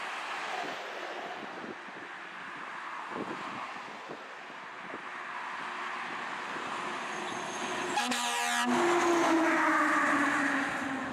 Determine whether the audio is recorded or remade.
recorded